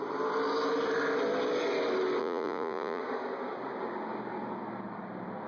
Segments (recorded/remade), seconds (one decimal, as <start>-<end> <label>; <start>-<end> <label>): 0.0-2.2 recorded; 2.2-3.0 remade; 3.0-5.5 recorded